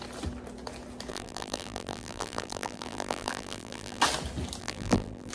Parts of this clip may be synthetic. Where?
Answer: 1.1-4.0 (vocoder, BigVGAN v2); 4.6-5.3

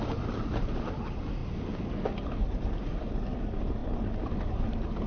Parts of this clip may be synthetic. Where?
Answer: 0.0-1.4 (vocoder, BigVGAN v2); 3.0-3.8; 4.4-5.1

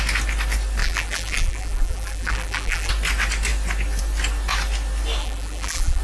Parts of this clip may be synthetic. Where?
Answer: 0.8-2.9 (vocoder, BigVGAN v2); 5.2-6.0